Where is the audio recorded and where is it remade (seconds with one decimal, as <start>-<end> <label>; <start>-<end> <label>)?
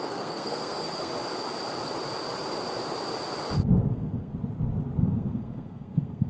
0.0-1.1 remade; 1.1-3.9 recorded; 3.9-4.3 remade; 4.3-5.0 recorded; 5.0-6.3 remade